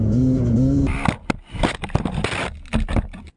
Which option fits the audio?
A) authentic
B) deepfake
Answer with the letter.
A